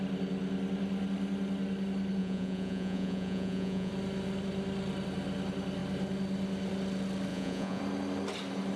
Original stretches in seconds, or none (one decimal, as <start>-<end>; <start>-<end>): 0.0-2.2; 3.9-7.3; 7.8-8.8